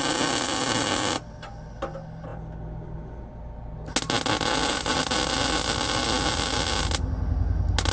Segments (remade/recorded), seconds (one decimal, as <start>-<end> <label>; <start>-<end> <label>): 0.0-7.9 recorded

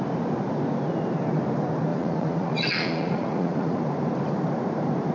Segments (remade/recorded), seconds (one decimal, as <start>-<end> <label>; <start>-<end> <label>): 0.0-1.9 recorded; 1.9-3.8 remade; 3.8-5.1 recorded

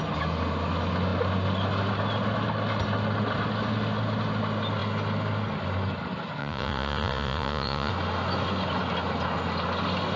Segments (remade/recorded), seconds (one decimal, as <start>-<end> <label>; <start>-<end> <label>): 0.0-6.4 recorded; 6.4-7.9 remade; 7.9-10.2 recorded

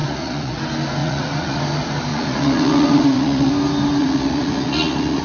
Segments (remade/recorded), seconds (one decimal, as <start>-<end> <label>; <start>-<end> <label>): 0.0-0.6 remade; 0.6-1.0 recorded; 1.0-1.6 remade; 1.6-2.1 recorded; 2.1-3.5 remade; 3.5-4.0 recorded; 4.0-5.2 remade

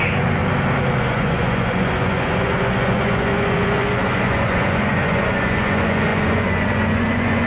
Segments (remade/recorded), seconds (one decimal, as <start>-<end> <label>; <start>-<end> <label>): 0.0-0.4 remade; 0.4-1.0 recorded; 1.0-7.5 remade

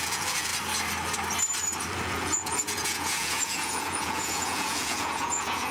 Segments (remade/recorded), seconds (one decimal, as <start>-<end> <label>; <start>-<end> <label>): 0.0-0.5 remade; 0.5-2.0 recorded; 2.0-5.7 remade

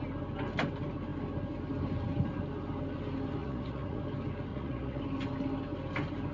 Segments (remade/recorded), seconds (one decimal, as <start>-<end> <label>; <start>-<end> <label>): 0.0-3.4 recorded; 3.4-4.0 remade; 4.0-4.5 recorded; 4.5-5.0 remade; 5.0-6.3 recorded